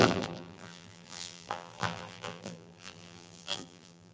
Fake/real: fake